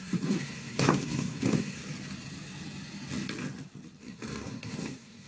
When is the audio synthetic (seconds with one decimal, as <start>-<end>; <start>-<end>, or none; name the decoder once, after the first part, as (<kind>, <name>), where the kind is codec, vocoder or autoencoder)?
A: 0.0-1.8 (codec, SNAC); 4.0-5.3

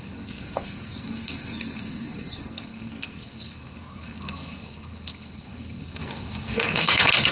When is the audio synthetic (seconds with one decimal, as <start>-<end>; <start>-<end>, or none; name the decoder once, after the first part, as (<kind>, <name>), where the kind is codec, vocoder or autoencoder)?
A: 0.0-7.3 (codec, SNAC)

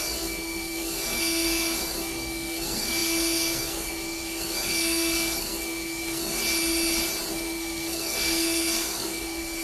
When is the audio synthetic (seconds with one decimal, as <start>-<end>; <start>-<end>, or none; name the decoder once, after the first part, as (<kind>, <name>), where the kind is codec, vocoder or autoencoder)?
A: 0.0-6.4 (codec, SNAC); 7.3-9.6

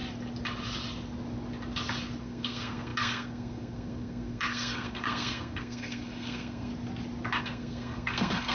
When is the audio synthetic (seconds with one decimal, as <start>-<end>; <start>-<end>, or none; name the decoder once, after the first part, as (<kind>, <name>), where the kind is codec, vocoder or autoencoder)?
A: 2.2-6.7 (codec, SNAC); 7.4-8.5